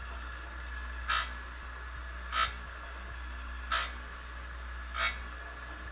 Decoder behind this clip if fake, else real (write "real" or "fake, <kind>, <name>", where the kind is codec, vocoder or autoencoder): real